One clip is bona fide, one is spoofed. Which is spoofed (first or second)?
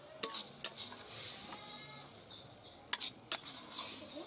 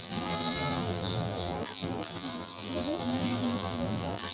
second